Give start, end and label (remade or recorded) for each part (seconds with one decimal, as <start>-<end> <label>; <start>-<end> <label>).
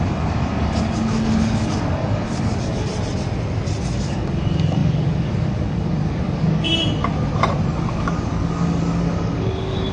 0.0-2.9 remade; 2.9-3.8 recorded; 3.8-6.7 remade; 6.7-7.8 recorded; 7.8-9.9 remade